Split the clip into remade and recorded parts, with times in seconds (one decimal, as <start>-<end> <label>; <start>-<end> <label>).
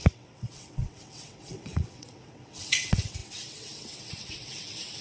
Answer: 0.0-5.0 remade